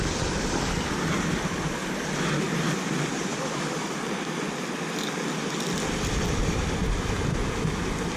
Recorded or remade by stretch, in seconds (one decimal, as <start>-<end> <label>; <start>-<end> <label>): 0.0-8.2 recorded